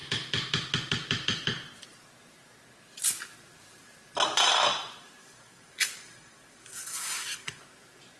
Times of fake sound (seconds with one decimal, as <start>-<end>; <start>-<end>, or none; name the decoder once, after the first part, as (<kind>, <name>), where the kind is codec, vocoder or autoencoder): 5.2-7.6 (codec, DAC)